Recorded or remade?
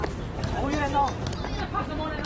remade